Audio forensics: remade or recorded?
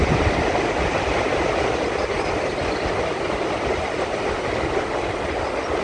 recorded